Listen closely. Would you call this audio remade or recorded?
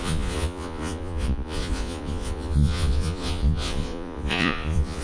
remade